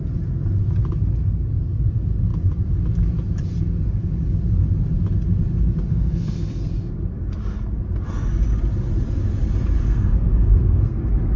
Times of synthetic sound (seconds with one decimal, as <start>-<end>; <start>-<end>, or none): 5.9-6.7; 9.8-11.0